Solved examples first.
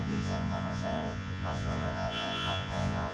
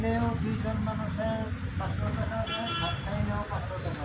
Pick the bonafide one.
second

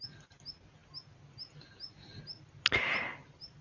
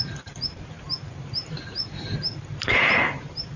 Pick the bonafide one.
first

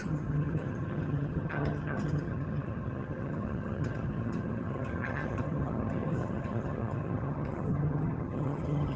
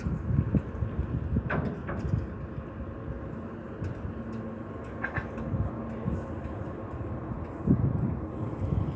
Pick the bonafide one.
second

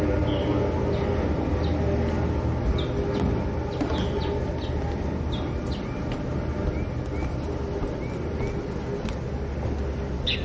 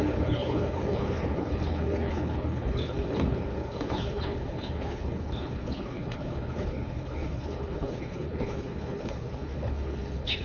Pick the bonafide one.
first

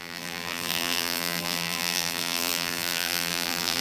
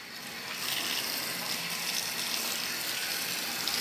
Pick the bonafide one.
second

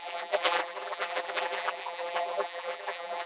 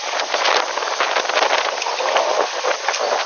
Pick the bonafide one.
second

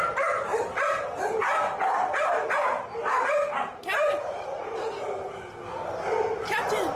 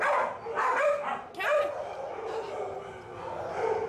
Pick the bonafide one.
second